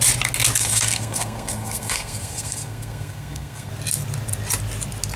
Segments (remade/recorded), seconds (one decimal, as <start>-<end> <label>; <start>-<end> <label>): 0.0-0.6 recorded; 0.6-3.7 remade; 3.7-5.2 recorded